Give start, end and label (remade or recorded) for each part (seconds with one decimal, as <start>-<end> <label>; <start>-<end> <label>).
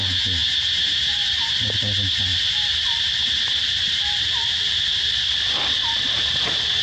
0.0-0.4 recorded; 0.4-1.3 remade; 1.3-2.3 recorded; 2.3-5.6 remade; 5.6-6.8 recorded